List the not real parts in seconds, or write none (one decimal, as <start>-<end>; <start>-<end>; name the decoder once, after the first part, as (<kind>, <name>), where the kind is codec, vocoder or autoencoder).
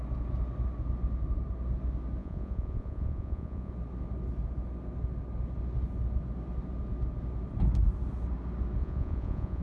2.2-3.7 (vocoder, Vocos); 8.8-9.6